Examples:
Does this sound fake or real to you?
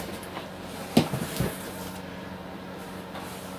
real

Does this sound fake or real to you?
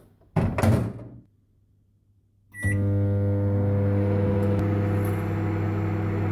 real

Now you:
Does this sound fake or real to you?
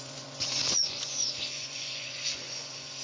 fake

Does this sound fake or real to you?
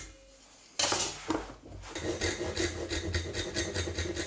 real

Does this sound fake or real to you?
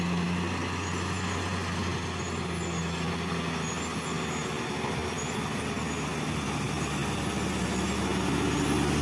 real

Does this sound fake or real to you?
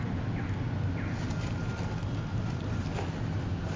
real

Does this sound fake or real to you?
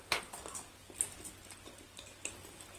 real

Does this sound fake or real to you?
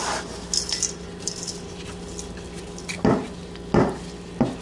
real